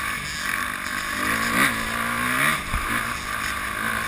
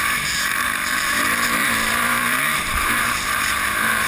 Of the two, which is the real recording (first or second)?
first